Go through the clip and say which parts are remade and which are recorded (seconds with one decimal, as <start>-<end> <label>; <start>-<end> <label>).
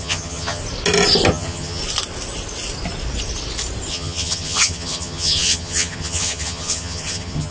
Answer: 0.0-0.6 remade; 0.6-1.3 recorded; 1.3-1.8 remade; 1.8-3.9 recorded; 3.9-7.5 remade